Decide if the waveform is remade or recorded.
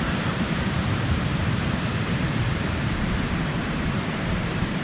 remade